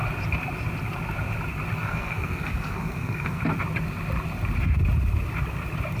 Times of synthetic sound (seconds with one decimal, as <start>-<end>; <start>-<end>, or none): 1.8-3.4